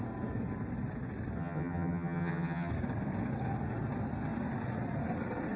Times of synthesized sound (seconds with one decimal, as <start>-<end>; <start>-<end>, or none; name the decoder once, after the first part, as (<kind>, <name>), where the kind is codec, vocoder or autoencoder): 1.4-2.7 (vocoder, HiFi-GAN)